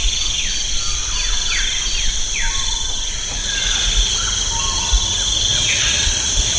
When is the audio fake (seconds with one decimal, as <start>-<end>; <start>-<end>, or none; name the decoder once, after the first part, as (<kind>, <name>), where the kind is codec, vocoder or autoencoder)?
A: 5.5-6.6 (vocoder, Vocos)